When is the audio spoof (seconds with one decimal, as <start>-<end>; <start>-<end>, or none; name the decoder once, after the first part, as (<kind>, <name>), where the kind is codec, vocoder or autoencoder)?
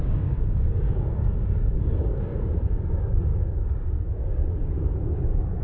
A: 0.0-2.3 (codec, DAC); 2.9-3.3